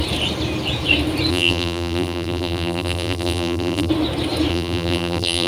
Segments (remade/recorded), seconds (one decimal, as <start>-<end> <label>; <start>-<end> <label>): 0.0-1.3 recorded; 1.3-3.9 remade; 3.9-4.5 recorded; 4.5-5.5 remade